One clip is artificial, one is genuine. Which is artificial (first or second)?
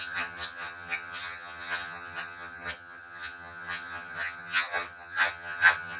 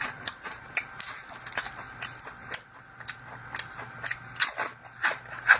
first